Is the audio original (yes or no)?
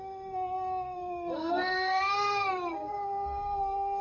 no